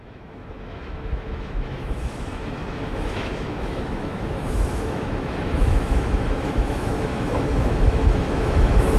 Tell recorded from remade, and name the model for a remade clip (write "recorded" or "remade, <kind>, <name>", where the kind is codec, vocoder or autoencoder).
remade, autoencoder, DAC-VAE